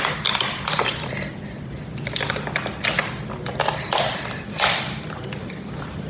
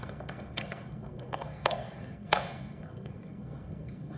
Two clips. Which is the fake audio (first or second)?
second